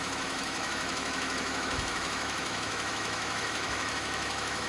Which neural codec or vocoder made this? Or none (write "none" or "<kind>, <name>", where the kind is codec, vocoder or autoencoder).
autoencoder, DAC-VAE